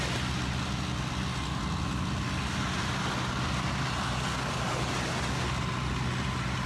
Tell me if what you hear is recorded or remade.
recorded